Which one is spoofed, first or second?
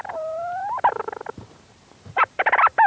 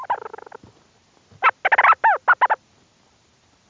first